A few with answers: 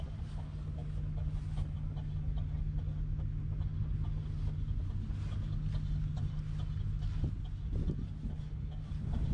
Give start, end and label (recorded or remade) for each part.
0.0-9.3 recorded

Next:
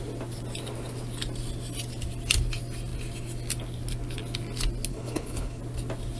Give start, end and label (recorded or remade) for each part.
0.0-4.9 recorded; 4.9-5.6 remade; 5.6-6.2 recorded

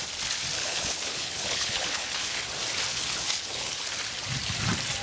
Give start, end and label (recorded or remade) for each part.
0.0-0.6 recorded; 0.6-2.4 remade; 2.4-2.9 recorded; 2.9-3.9 remade; 3.9-5.0 recorded

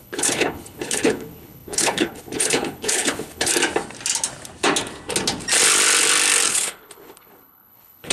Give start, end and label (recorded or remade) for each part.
0.0-3.5 remade; 3.5-6.5 recorded; 6.5-8.1 remade

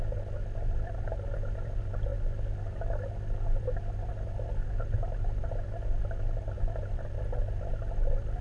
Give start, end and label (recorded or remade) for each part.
0.0-8.4 recorded